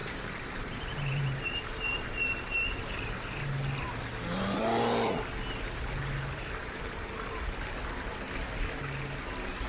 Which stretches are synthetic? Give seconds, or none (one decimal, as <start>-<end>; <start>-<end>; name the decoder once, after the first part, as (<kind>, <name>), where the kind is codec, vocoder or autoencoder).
0.0-3.1 (vocoder, BigVGAN v2); 6.6-7.4